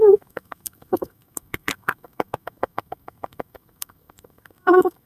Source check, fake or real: fake